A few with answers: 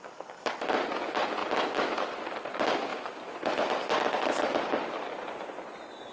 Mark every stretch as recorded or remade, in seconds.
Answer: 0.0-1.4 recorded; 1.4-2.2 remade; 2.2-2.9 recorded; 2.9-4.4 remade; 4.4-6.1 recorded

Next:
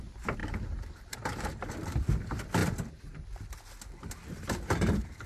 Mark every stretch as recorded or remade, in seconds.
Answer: 0.0-2.6 remade; 2.6-4.1 recorded; 4.1-5.3 remade